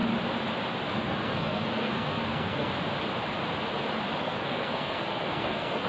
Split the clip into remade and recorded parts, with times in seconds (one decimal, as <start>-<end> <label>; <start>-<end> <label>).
0.0-0.9 recorded; 0.9-2.7 remade; 2.7-4.2 recorded; 4.2-5.9 remade